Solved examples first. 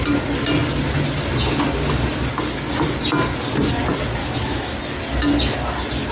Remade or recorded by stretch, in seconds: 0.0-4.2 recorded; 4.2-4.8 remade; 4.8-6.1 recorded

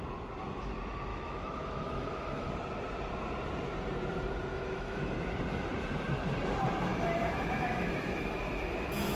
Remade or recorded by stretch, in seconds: 0.0-1.1 recorded; 1.1-2.5 remade; 2.5-4.5 recorded; 4.5-5.1 remade; 5.1-6.9 recorded; 6.9-9.2 remade

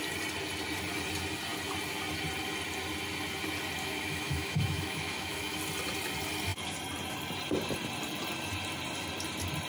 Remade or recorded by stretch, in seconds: 0.0-3.8 recorded; 3.8-5.6 remade; 5.6-9.7 recorded

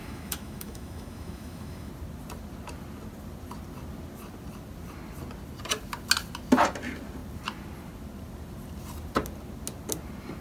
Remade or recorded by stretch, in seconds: 0.0-1.9 remade; 1.9-10.4 recorded

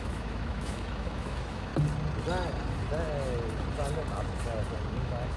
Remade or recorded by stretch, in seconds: 0.0-1.7 remade; 1.7-4.9 recorded; 4.9-5.4 remade

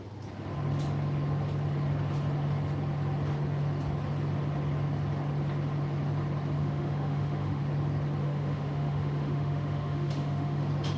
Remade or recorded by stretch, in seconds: 0.0-6.6 recorded; 6.6-7.6 remade; 7.6-8.2 recorded; 8.2-10.6 remade; 10.6-11.0 recorded

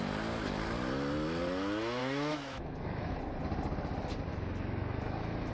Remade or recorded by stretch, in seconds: 0.0-2.0 recorded; 2.0-3.2 remade; 3.2-4.3 recorded; 4.3-5.5 remade